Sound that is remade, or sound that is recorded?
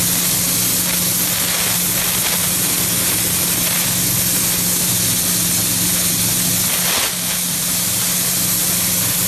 recorded